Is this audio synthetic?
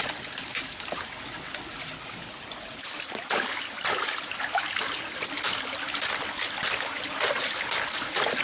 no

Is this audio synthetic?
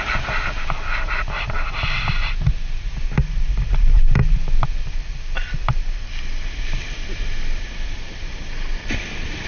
no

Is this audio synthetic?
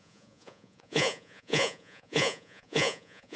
yes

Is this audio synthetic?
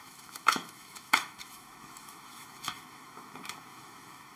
yes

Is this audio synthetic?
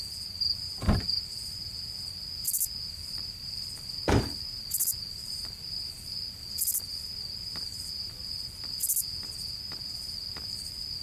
no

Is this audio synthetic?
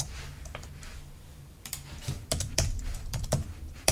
yes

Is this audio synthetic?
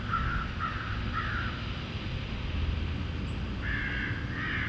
no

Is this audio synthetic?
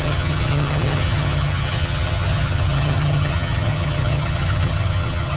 yes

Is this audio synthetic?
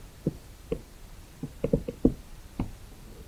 yes